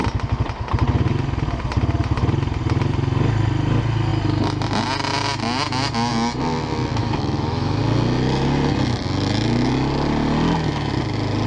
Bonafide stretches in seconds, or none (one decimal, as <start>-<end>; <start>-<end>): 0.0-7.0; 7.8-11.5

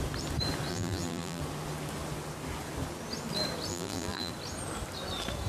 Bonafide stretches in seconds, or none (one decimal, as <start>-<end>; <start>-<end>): 0.0-0.7; 1.4-3.7; 4.3-5.5

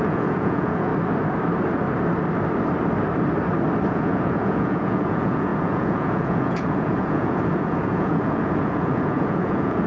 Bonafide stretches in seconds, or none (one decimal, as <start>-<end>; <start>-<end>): 0.9-3.9

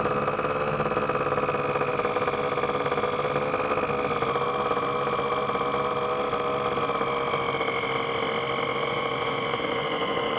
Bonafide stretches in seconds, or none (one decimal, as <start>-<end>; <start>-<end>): 0.0-8.7

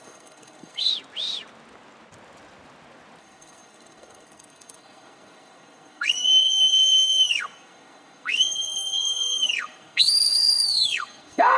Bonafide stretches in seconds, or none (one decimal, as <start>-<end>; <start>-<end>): 0.9-3.2

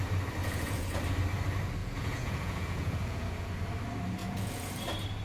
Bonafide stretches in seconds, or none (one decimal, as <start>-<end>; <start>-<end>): 0.0-0.4; 1.0-1.8; 3.5-4.2; 4.7-5.2